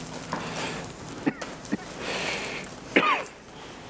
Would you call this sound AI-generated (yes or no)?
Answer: no